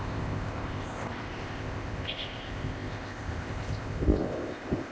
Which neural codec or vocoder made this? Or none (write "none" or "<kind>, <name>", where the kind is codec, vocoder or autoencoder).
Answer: codec, ZipCodec